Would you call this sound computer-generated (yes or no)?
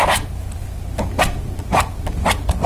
yes